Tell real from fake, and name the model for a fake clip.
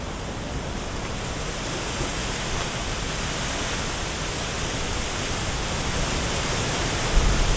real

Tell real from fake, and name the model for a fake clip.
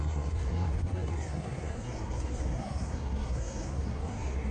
fake, codec, SNAC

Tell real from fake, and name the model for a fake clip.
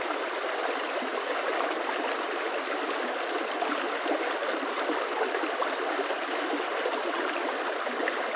real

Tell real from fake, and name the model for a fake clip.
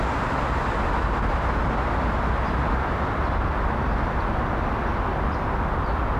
real